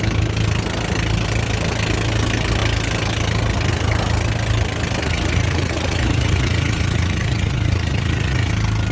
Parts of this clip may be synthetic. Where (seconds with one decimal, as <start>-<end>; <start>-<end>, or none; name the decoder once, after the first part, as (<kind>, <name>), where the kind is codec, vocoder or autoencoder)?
5.0-8.5 (vocoder, Vocos)

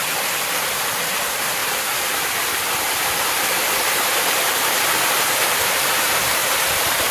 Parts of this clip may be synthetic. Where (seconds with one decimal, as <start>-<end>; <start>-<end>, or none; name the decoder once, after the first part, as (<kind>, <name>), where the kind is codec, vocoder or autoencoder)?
0.0-7.1 (vocoder, BigVGAN v2)

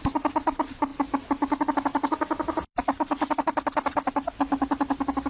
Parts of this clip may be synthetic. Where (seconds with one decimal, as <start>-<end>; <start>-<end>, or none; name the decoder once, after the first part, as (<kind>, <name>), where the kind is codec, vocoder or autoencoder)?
none

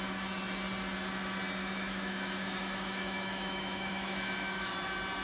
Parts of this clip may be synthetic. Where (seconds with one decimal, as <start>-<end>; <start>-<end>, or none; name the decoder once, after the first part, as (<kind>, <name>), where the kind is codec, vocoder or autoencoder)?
1.6-4.7 (autoencoder, DAC-VAE)

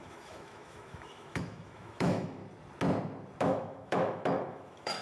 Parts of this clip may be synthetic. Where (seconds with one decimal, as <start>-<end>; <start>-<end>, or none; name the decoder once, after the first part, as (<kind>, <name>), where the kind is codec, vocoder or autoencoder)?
0.0-2.4 (autoencoder, DAC-VAE); 3.4-5.0

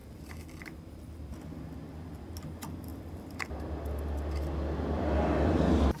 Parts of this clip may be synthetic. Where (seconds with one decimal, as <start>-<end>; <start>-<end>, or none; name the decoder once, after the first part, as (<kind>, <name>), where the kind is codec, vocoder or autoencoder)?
none